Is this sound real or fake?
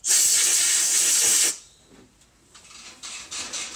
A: fake